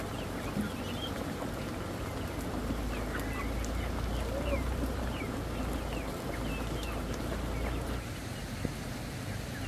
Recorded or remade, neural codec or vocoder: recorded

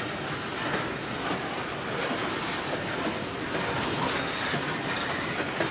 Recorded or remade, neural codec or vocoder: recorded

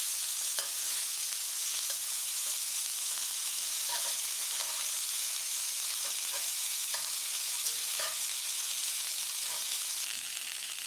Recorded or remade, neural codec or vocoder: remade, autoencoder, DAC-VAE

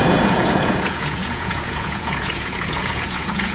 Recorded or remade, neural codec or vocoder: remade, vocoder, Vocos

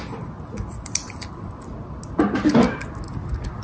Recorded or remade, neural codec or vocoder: recorded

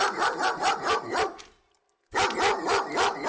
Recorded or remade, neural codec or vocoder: recorded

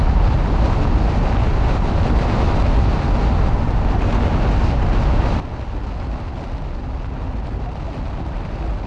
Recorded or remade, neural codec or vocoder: recorded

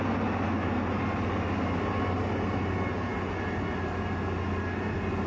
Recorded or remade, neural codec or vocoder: recorded